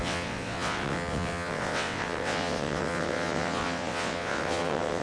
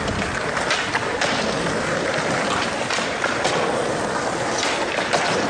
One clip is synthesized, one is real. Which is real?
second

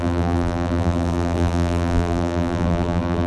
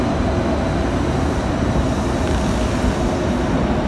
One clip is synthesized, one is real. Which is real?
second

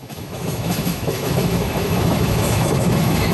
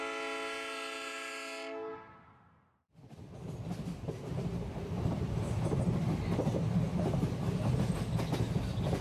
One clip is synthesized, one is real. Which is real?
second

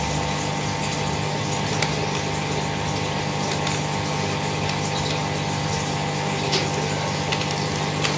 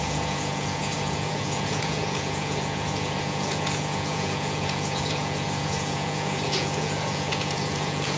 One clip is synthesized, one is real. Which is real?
first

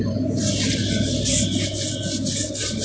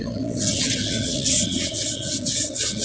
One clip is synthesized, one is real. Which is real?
first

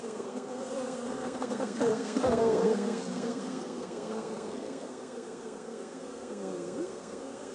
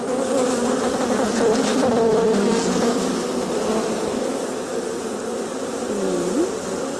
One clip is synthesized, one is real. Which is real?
second